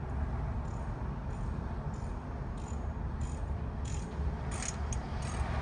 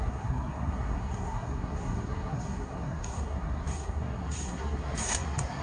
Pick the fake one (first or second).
second